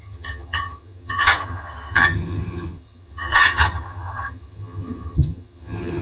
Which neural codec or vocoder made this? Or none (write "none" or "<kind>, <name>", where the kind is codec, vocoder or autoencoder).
vocoder, HiFi-GAN